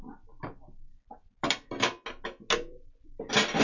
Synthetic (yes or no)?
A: no